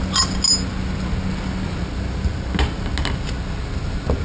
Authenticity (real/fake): real